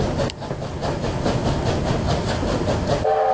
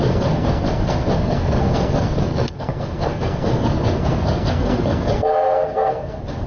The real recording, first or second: first